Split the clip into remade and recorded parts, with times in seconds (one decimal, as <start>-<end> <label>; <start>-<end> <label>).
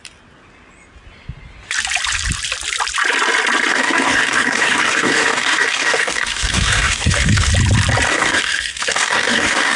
0.0-3.7 recorded; 3.7-7.5 remade; 7.5-8.1 recorded; 8.1-9.8 remade